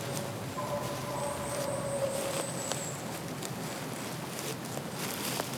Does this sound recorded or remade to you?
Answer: recorded